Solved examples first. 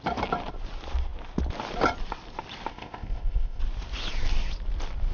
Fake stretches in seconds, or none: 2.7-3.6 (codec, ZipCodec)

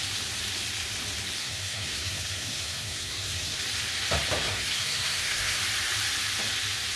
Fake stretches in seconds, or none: 1.4-3.6 (codec, SNAC); 4.4-5.6

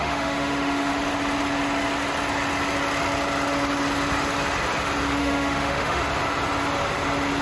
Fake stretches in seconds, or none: 0.0-0.9 (autoencoder, DAC-VAE); 5.2-6.0

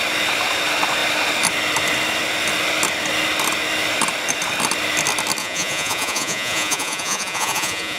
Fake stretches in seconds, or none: 5.4-8.0 (vocoder, Vocos)

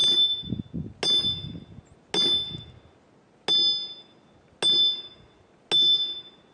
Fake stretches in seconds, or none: none